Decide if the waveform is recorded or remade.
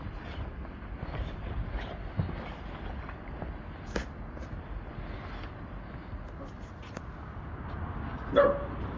recorded